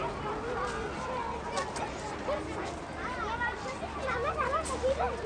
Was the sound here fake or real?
real